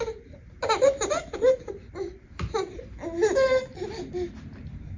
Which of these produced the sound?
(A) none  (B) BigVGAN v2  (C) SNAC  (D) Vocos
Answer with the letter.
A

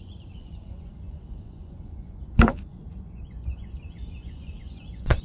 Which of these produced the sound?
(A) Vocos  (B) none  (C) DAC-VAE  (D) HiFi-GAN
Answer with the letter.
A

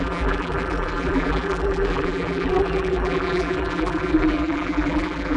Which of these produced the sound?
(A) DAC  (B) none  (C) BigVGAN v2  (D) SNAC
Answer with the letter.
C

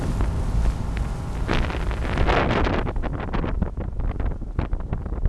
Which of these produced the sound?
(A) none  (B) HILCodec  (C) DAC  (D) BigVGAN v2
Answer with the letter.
A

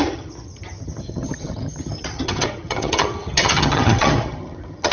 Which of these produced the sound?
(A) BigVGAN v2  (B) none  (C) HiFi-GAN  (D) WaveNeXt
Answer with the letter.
C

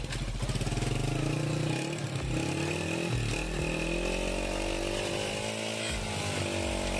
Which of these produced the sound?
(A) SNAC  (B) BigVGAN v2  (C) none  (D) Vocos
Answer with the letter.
C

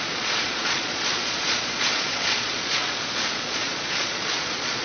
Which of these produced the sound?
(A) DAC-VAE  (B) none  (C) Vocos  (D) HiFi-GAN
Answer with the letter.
C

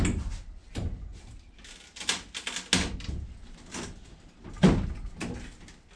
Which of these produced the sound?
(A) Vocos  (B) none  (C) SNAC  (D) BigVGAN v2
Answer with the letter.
B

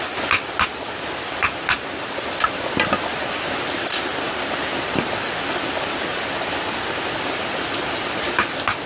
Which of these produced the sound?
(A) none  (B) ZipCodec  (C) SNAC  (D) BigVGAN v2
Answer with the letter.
A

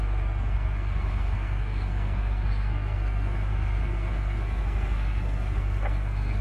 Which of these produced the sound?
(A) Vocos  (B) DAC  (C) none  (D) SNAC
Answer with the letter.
D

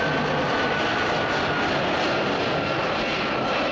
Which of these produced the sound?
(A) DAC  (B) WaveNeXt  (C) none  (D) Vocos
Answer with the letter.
C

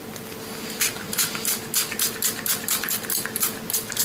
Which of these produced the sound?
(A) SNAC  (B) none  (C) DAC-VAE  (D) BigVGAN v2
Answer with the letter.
B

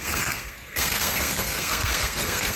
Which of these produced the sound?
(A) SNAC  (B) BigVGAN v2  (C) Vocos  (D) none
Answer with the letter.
A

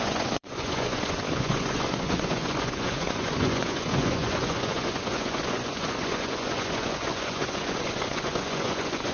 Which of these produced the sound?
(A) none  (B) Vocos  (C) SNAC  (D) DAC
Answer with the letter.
B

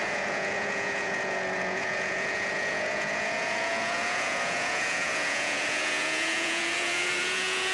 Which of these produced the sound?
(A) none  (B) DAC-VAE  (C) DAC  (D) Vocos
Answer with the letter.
D